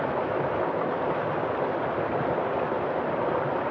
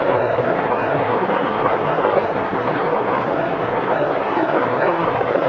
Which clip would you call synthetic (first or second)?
second